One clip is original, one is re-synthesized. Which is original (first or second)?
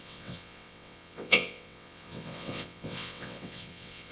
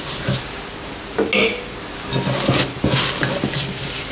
second